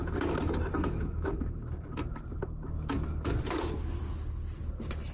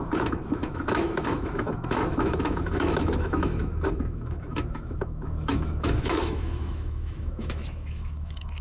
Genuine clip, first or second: first